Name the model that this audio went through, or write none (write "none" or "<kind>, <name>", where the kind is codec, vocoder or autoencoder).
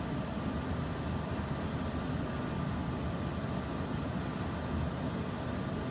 none